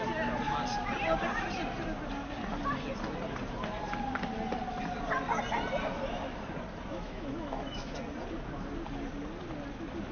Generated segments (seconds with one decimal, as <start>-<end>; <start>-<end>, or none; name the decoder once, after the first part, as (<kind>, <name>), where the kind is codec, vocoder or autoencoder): 6.9-8.0 (autoencoder, DAC-VAE)